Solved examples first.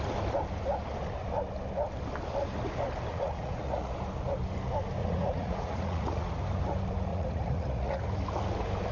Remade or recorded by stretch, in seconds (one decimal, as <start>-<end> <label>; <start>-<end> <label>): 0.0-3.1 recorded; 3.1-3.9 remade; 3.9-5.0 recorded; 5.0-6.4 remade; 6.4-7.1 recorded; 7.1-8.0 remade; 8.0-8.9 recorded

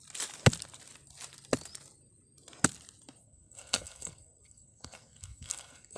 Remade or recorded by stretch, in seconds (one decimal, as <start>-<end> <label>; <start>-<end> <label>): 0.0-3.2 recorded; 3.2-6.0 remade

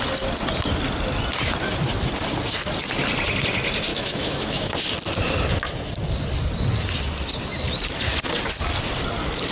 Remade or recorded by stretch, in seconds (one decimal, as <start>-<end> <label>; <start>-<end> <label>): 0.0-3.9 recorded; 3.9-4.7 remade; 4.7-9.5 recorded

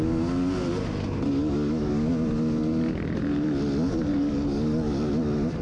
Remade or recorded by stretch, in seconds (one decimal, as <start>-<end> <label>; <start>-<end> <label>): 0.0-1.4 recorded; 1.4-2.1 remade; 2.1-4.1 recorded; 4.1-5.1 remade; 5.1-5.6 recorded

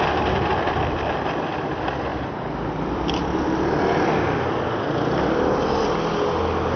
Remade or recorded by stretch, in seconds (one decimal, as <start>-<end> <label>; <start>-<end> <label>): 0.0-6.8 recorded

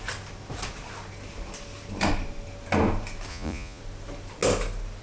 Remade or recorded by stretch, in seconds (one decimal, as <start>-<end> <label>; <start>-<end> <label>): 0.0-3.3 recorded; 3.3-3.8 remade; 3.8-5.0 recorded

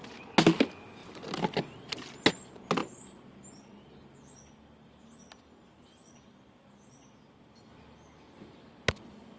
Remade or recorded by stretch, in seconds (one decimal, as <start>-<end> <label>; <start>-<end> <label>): 0.0-9.4 recorded

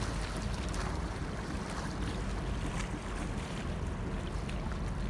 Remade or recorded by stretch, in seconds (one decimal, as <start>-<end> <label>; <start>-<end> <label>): 0.0-5.1 recorded